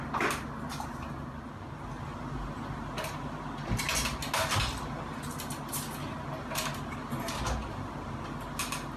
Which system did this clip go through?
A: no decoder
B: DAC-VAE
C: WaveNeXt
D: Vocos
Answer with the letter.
A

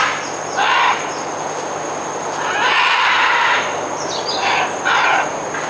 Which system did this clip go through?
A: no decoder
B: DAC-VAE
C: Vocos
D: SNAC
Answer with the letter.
A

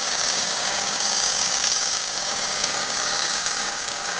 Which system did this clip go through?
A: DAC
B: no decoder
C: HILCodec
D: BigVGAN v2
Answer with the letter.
A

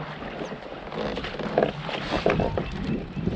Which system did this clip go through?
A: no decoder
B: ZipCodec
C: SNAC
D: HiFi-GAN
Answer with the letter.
A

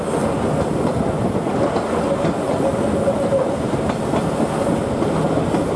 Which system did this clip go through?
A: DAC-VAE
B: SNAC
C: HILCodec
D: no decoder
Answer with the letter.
D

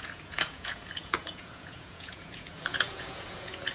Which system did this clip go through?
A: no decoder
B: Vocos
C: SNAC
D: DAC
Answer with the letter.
B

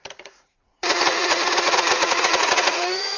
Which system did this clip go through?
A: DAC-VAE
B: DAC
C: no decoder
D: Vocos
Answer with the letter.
D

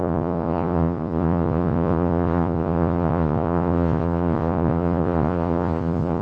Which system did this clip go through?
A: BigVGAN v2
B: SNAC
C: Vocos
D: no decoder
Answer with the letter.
C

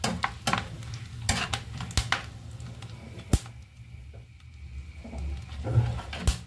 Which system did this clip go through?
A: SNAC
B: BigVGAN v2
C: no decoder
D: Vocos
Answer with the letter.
C